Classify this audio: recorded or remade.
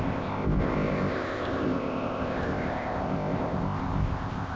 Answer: remade